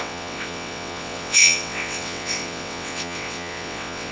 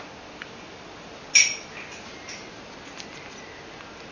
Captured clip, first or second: second